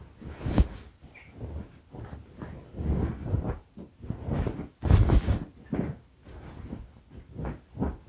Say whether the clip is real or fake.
real